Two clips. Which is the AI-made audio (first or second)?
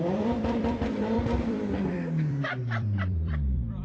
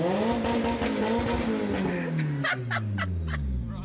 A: first